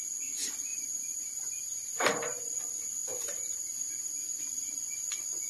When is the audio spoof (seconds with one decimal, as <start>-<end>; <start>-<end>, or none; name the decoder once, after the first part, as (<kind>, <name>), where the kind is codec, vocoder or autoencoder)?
0.7-2.6 (vocoder, BigVGAN v2); 3.0-4.4